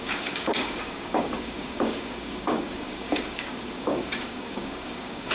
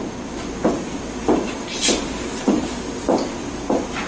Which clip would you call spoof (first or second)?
first